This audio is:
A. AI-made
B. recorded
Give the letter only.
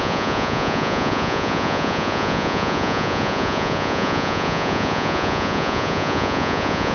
A